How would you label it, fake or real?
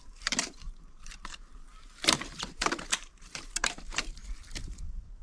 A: fake